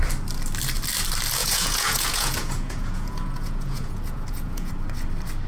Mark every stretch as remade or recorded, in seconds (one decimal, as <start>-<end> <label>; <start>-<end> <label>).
0.0-1.4 recorded; 1.4-4.7 remade; 4.7-5.5 recorded